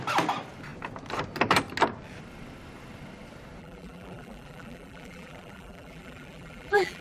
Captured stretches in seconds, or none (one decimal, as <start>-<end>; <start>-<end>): 0.0-3.6